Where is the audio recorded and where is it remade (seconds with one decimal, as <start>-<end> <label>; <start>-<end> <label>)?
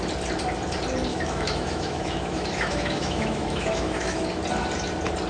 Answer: 0.0-1.1 recorded; 1.1-4.3 remade; 4.3-5.3 recorded